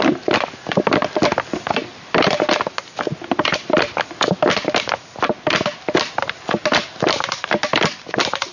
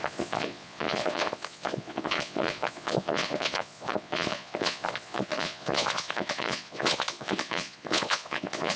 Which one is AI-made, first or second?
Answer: second